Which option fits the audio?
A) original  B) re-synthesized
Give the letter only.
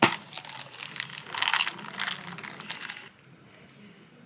A